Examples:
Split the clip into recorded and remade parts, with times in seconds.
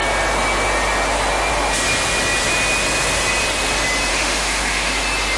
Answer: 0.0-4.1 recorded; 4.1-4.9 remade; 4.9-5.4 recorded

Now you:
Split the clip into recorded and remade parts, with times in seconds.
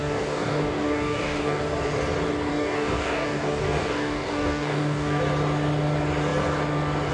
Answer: 0.0-1.6 remade; 1.6-2.5 recorded; 2.5-5.2 remade; 5.2-7.1 recorded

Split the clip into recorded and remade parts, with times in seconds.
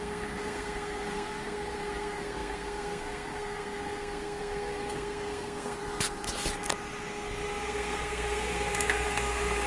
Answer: 0.0-5.8 remade; 5.8-7.0 recorded; 7.0-9.7 remade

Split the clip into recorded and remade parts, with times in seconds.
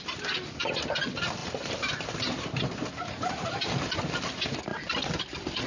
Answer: 0.0-1.4 recorded; 1.4-2.9 remade; 2.9-4.7 recorded; 4.7-5.2 remade; 5.2-5.7 recorded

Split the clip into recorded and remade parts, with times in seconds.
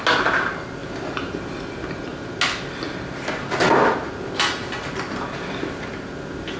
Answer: 0.0-6.6 recorded